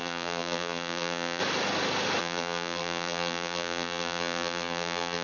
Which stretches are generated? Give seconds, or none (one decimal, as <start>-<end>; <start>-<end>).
0.0-1.4; 2.2-5.2